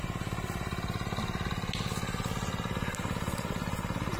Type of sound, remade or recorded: recorded